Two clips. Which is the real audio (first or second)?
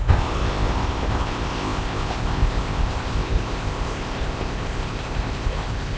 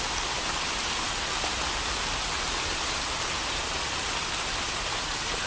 second